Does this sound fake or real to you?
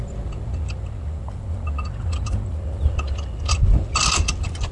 real